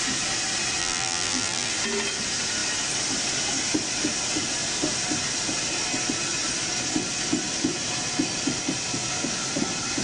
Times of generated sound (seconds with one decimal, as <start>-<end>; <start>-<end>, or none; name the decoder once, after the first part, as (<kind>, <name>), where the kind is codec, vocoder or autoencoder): 0.8-1.7 (vocoder, BigVGAN v2)